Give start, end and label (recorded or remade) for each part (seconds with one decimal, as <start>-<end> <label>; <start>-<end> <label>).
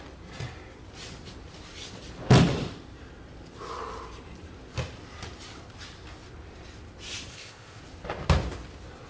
0.0-7.3 recorded; 7.3-7.8 remade; 7.8-9.1 recorded